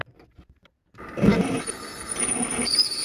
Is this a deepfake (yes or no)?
no